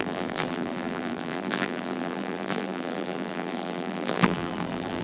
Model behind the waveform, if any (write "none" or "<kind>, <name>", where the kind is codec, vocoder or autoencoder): vocoder, BigVGAN v2